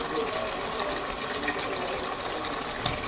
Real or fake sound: real